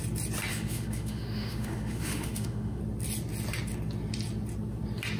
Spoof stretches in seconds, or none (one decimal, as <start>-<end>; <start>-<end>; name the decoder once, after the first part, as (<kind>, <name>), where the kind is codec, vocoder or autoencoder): 0.5-2.8 (autoencoder, DAC-VAE)